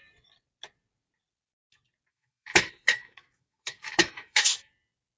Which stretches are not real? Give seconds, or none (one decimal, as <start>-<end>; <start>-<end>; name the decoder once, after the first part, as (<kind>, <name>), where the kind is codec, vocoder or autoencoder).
2.1-4.7 (autoencoder, DAC-VAE)